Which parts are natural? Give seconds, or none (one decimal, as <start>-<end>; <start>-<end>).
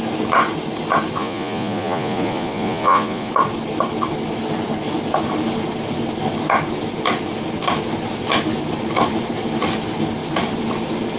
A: 0.0-1.2; 3.3-11.2